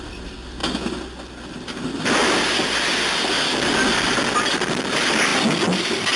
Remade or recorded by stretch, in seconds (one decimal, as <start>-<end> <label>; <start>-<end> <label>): 0.0-6.2 recorded